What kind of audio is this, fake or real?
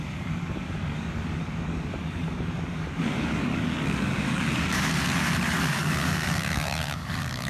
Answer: fake